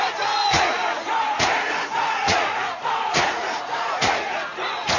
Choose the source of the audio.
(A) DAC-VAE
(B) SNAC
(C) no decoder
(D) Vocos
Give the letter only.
D